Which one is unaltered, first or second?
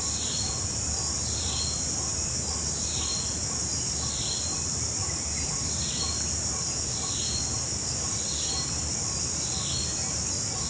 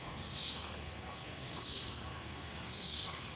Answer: first